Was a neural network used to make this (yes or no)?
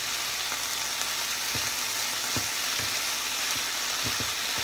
no